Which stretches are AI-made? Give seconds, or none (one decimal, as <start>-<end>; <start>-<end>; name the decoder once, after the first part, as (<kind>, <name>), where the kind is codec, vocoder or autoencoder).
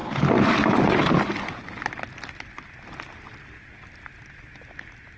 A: none